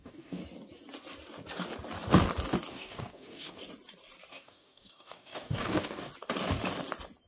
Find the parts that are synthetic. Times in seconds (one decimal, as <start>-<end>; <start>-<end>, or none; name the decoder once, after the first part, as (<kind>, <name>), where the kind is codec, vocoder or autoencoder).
0.0-0.4 (codec, DAC); 2.7-3.6; 4.3-6.1